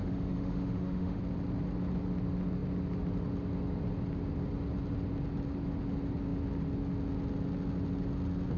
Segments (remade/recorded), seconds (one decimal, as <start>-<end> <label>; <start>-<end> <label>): 0.0-1.2 remade; 1.2-8.6 recorded